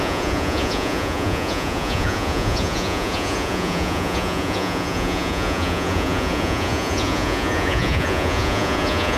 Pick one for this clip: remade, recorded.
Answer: remade